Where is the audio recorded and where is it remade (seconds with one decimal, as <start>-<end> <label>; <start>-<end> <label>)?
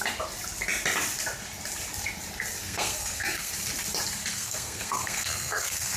0.0-2.6 recorded; 2.6-3.5 remade; 3.5-4.3 recorded; 4.3-6.0 remade